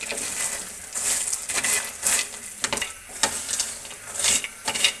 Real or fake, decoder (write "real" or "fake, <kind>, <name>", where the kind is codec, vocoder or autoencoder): real